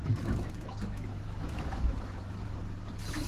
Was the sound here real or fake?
fake